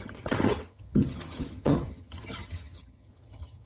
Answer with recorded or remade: remade